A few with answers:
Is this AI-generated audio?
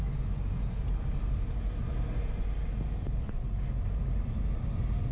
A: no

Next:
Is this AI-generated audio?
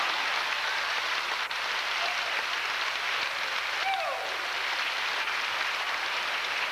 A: no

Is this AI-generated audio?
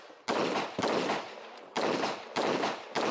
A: no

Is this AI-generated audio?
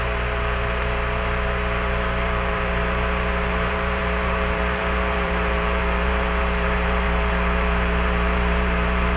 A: yes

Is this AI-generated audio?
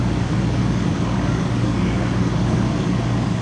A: yes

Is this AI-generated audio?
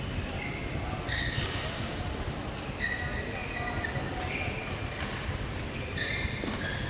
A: no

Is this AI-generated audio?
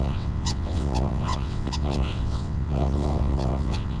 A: yes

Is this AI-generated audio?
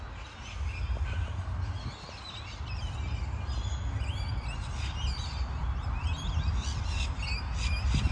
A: no